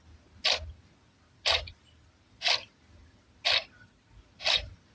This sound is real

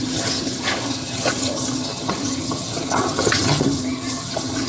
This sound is fake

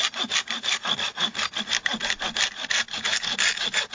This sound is real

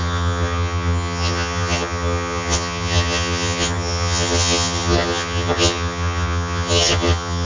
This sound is fake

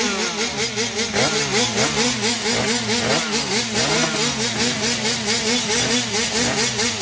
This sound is real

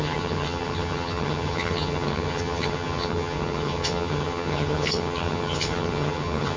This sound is fake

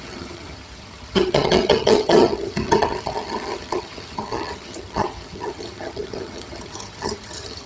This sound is fake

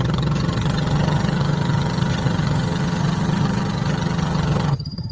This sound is fake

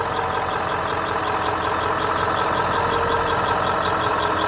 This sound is real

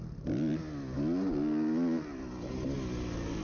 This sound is real